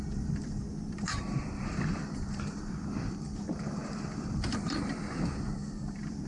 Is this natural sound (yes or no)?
no